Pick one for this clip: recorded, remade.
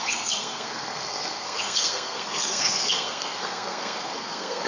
remade